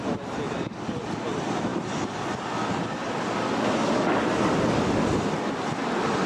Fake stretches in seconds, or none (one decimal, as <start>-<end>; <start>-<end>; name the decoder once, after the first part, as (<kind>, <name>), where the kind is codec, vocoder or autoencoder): none